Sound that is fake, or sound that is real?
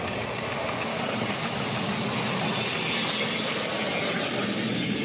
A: real